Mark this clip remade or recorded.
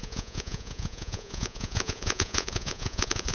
remade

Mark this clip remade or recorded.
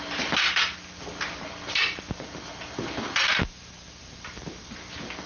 recorded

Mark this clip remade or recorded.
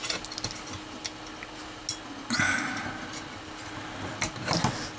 recorded